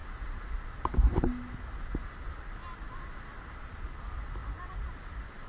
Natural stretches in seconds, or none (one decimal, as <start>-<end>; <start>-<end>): 0.0-5.5